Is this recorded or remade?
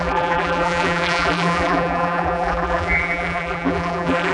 remade